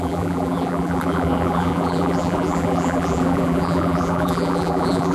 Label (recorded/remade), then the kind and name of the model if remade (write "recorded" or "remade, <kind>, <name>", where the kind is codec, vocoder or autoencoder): remade, vocoder, BigVGAN v2